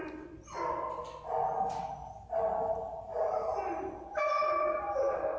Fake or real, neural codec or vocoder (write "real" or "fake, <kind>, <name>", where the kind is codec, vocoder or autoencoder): real